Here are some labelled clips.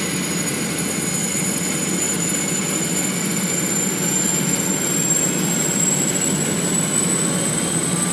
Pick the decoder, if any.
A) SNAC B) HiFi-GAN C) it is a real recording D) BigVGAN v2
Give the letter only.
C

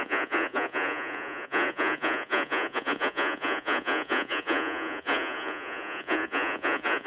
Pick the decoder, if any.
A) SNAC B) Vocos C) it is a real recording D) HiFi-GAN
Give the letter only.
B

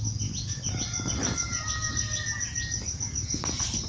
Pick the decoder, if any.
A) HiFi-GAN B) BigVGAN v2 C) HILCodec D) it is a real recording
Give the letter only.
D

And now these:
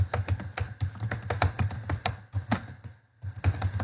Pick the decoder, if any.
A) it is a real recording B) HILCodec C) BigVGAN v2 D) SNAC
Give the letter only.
A